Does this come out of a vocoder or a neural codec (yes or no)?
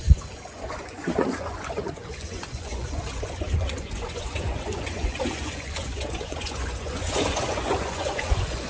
yes